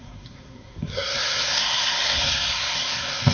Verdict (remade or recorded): remade